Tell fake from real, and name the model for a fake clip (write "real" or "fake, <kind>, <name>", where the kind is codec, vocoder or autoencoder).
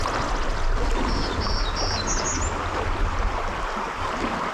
real